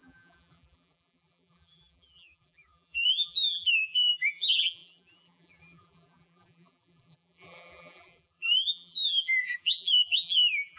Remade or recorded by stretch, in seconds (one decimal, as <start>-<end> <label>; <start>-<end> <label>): 0.0-10.8 remade